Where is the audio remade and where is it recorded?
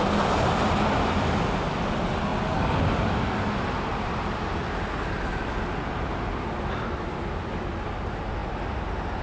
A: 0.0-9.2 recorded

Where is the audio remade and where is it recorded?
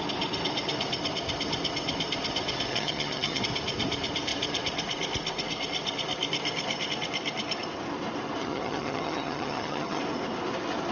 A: 0.0-2.7 recorded; 2.7-3.4 remade; 3.4-8.4 recorded; 8.4-10.0 remade; 10.0-10.9 recorded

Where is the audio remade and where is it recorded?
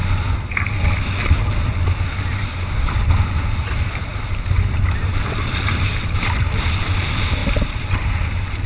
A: 0.0-3.2 recorded; 3.2-5.9 remade; 5.9-6.8 recorded; 6.8-8.7 remade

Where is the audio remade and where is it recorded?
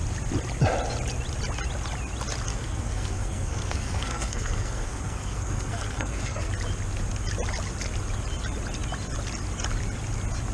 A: 0.0-2.5 recorded; 2.5-6.5 remade; 6.5-10.5 recorded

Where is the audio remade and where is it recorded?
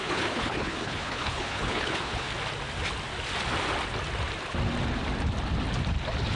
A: 0.0-2.3 remade; 2.3-6.4 recorded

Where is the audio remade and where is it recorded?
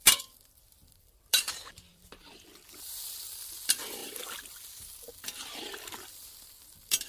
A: 0.0-7.1 remade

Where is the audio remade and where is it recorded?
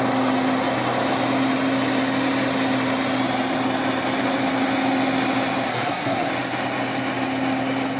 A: 0.0-5.7 recorded; 5.7-6.3 remade; 6.3-8.0 recorded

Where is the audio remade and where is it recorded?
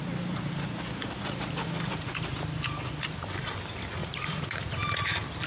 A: 0.0-4.0 recorded; 4.0-4.7 remade; 4.7-5.5 recorded